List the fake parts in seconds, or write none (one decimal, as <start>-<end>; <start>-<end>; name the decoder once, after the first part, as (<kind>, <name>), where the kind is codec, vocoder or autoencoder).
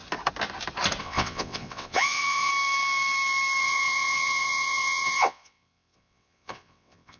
1.0-2.5 (vocoder, WaveNeXt); 3.6-7.2